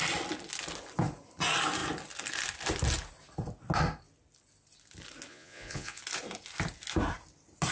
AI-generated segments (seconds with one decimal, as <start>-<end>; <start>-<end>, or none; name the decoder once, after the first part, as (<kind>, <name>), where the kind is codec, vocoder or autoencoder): 5.3-6.0 (vocoder, Vocos)